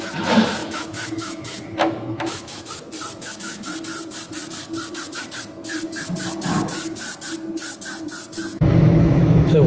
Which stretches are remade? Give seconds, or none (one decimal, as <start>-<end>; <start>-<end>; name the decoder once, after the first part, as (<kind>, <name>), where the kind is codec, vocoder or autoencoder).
0.6-2.7 (autoencoder, DAC-VAE); 3.2-3.7; 8.5-9.7